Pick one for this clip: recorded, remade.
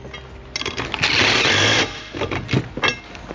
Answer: recorded